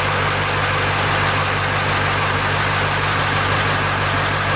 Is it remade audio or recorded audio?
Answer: recorded